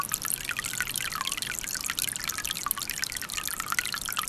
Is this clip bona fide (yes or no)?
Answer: yes